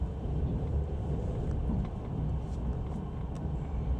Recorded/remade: recorded